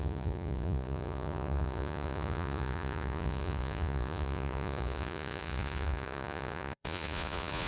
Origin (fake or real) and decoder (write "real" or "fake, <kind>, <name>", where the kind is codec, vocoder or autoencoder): fake, vocoder, Vocos